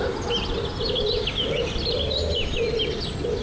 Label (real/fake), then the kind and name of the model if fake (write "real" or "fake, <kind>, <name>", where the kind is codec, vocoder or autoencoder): real